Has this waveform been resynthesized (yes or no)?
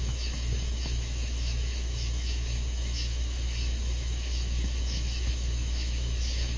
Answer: yes